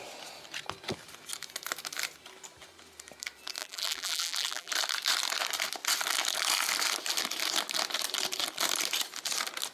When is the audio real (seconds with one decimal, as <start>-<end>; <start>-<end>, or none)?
0.0-3.6; 4.7-9.7